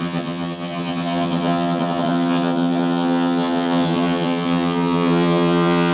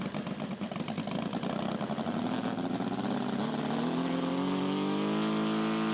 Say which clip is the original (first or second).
second